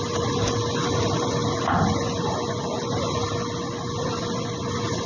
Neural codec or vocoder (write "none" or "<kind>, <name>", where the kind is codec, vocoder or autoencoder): none